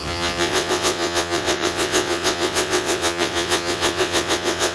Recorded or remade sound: remade